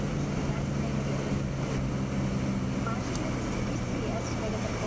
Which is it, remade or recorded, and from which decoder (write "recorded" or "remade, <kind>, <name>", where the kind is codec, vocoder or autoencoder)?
recorded